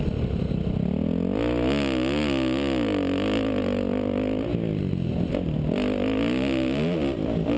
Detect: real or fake real